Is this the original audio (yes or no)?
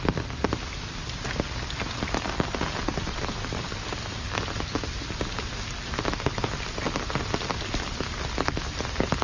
yes